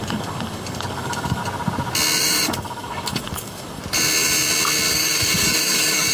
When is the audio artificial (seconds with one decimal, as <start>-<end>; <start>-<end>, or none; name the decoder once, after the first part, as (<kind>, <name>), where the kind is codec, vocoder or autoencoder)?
0.0-1.4 (codec, DAC); 2.2-3.8; 4.9-6.1